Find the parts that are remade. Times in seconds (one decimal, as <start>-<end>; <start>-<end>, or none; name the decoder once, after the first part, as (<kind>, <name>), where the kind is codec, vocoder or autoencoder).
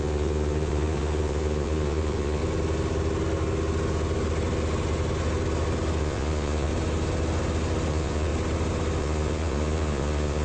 0.0-2.4 (vocoder, Vocos); 6.0-6.7; 7.9-8.3; 9.0-10.4